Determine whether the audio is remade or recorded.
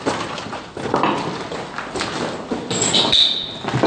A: recorded